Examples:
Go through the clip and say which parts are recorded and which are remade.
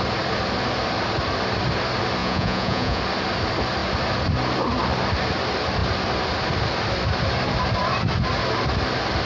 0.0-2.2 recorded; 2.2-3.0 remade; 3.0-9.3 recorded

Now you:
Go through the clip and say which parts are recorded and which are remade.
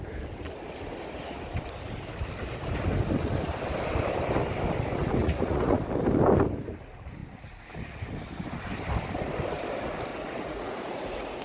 0.0-5.2 recorded; 5.2-5.8 remade; 5.8-10.1 recorded; 10.1-11.4 remade